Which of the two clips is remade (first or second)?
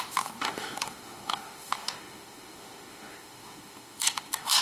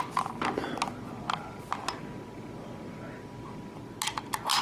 first